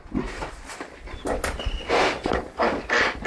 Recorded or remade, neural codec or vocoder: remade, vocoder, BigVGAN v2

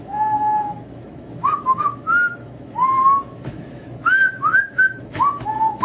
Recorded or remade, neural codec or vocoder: remade, autoencoder, DAC-VAE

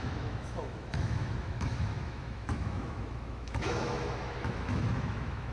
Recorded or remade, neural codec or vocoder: remade, autoencoder, DAC-VAE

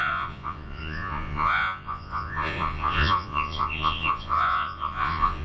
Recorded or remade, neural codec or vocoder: remade, vocoder, Vocos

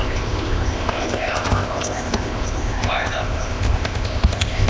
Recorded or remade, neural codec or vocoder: remade, codec, ZipCodec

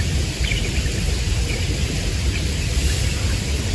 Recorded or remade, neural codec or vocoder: recorded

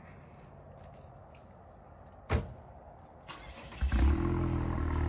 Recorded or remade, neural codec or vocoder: recorded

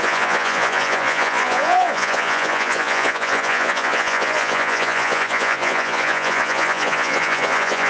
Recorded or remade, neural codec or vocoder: remade, vocoder, Vocos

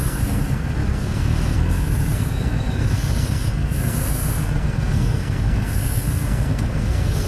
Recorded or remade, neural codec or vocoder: remade, codec, SNAC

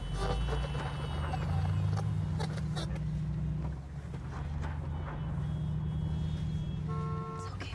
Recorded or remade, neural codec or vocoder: recorded